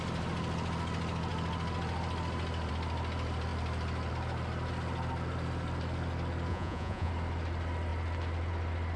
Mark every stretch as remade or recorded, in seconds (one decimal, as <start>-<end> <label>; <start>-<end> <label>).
0.0-6.5 recorded; 6.5-7.1 remade; 7.1-9.0 recorded